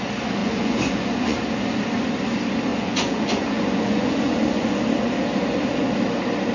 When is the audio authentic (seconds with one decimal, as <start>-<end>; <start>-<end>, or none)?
0.0-0.4; 1.4-2.7; 4.8-6.5